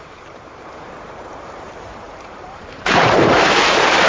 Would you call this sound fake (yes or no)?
yes